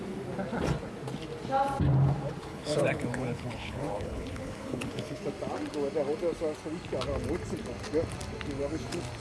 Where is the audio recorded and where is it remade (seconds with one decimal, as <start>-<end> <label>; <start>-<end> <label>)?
0.0-2.4 recorded; 2.4-5.2 remade; 5.2-9.2 recorded

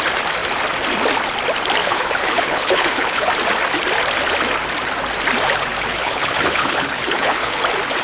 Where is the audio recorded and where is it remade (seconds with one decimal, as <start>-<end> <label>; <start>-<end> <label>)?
0.0-1.8 recorded; 1.8-3.3 remade; 3.3-5.9 recorded; 5.9-7.6 remade; 7.6-8.0 recorded

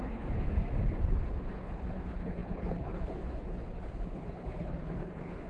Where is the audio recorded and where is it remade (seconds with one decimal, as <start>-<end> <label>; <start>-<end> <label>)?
0.0-0.5 remade; 0.5-1.1 recorded; 1.1-5.5 remade

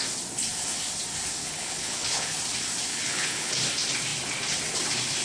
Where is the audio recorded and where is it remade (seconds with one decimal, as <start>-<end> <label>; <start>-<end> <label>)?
0.0-1.4 recorded; 1.4-2.4 remade; 2.4-2.9 recorded; 2.9-3.5 remade; 3.5-5.2 recorded

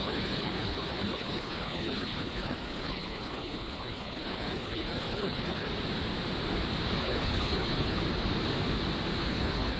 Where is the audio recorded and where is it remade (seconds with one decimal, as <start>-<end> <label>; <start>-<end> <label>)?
0.0-5.7 remade; 5.7-7.0 recorded; 7.0-8.0 remade; 8.0-9.2 recorded; 9.2-9.8 remade

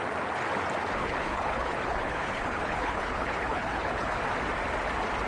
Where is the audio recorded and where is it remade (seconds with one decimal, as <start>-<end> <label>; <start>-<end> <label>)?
0.0-1.0 recorded; 1.0-4.2 remade; 4.2-5.3 recorded

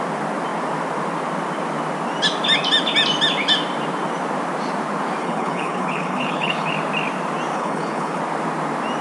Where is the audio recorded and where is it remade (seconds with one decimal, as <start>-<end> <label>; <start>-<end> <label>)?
0.0-5.2 recorded; 5.2-6.7 remade; 6.7-7.5 recorded; 7.5-8.2 remade; 8.2-9.0 recorded

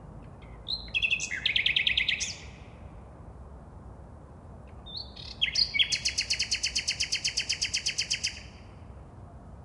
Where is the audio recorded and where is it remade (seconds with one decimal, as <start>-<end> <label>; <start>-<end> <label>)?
0.0-9.6 recorded